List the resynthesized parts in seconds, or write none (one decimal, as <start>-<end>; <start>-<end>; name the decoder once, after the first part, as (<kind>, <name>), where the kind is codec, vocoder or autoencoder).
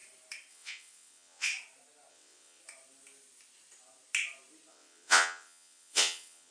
0.5-1.5 (vocoder, WaveNeXt); 2.1-2.6; 4.7-6.5